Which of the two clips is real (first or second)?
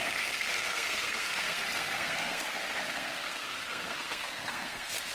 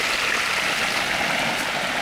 second